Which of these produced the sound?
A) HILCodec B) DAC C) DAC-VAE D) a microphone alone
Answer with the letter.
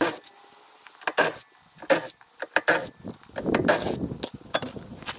D